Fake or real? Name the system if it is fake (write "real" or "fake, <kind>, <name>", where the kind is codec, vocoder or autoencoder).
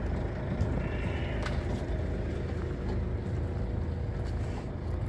real